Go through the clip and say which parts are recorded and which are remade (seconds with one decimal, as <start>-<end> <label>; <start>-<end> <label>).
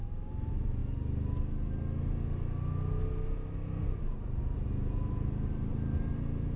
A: 0.0-0.8 remade; 0.8-3.8 recorded; 3.8-6.6 remade